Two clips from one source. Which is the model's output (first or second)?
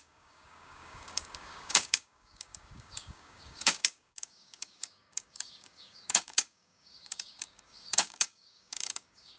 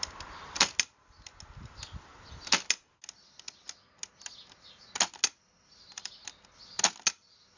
first